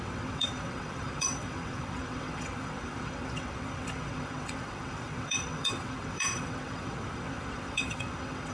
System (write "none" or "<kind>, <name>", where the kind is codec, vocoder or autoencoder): vocoder, WaveNeXt